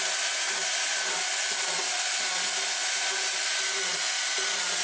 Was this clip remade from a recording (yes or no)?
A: no